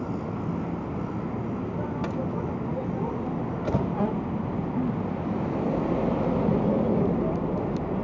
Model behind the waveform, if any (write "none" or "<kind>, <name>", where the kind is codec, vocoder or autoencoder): none